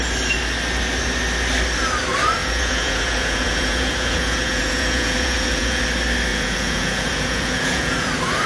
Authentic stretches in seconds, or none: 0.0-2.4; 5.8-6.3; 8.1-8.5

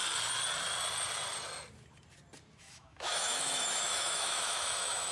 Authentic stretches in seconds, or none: 0.0-2.6

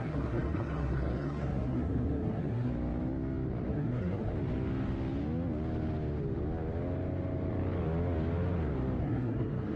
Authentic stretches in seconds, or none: 2.7-3.7; 4.3-9.0

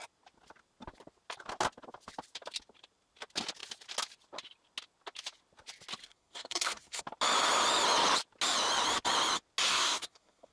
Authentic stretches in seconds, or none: 0.0-6.0; 7.0-9.7

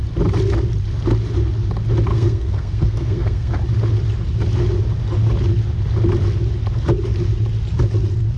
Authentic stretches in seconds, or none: 0.0-2.1; 3.5-8.4

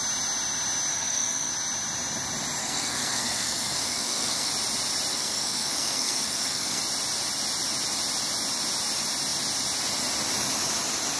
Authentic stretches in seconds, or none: 0.0-0.9; 1.5-2.6; 4.5-5.1; 6.8-11.2

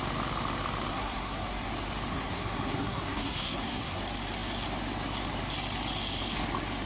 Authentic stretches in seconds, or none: 0.0-0.9; 1.7-2.1; 4.0-6.9